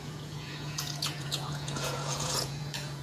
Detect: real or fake fake